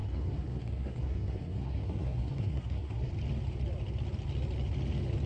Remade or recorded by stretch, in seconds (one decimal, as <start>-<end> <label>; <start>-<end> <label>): 0.0-3.1 remade; 3.1-5.3 recorded